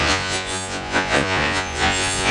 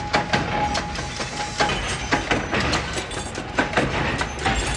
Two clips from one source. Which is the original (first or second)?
second